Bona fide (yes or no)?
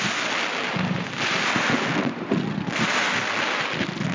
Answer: yes